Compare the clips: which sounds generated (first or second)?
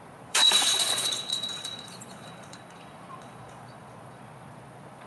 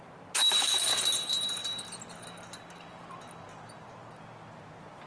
first